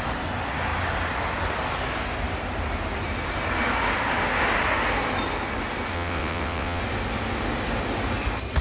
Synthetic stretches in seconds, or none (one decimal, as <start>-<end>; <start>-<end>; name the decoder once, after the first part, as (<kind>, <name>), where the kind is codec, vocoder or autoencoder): 5.9-6.8 (vocoder, WaveNeXt)